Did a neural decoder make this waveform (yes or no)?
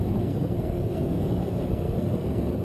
yes